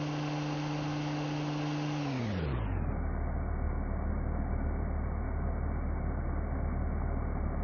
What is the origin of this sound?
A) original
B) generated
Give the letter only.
A